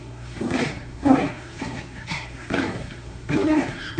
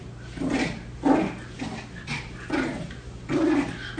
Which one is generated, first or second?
first